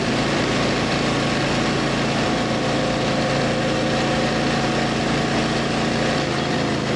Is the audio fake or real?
real